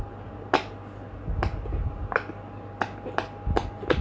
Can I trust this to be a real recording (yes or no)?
yes